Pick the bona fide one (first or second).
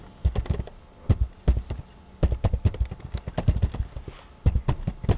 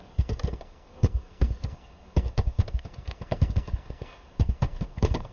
first